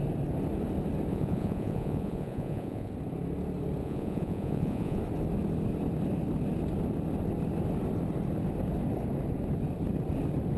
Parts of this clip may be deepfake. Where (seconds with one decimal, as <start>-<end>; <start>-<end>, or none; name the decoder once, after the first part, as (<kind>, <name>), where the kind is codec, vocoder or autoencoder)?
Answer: 1.1-2.9 (vocoder, Vocos); 3.8-5.0